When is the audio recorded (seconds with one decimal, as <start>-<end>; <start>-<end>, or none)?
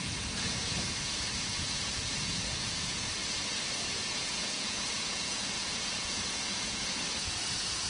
3.2-3.9